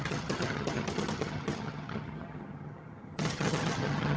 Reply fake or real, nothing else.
fake